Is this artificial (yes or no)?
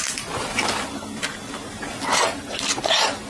no